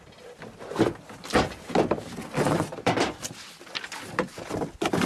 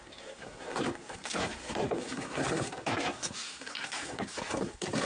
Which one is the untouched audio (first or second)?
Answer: first